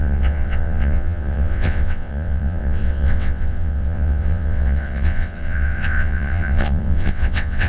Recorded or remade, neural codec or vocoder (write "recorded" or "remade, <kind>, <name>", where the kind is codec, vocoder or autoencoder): remade, vocoder, WaveNeXt